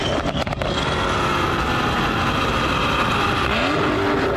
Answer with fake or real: real